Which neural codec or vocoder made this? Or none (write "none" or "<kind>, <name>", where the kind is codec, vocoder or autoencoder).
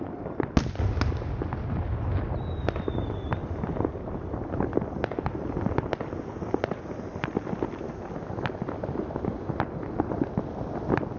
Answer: none